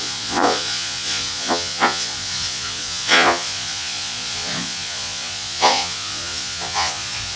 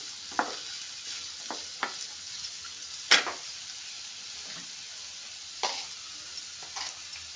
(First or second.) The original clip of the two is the second